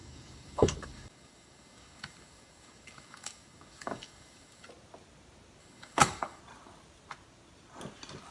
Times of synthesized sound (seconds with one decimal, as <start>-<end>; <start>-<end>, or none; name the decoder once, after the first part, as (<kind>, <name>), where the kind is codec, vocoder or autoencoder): 0.0-4.7 (codec, DAC); 5.6-6.4